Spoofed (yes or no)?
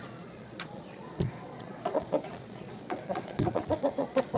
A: yes